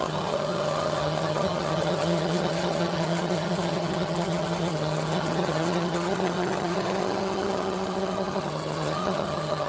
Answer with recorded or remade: remade